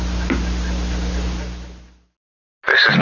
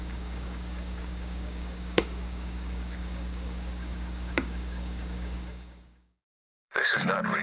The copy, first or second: second